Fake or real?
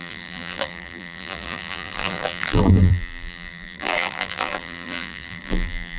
fake